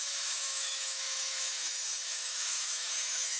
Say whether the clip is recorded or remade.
remade